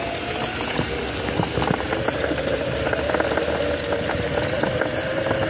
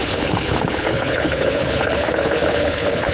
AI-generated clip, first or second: second